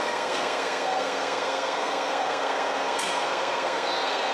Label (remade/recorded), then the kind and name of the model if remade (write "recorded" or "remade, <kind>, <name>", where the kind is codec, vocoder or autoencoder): remade, codec, SNAC